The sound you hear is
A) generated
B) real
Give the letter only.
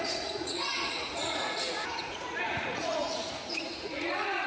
A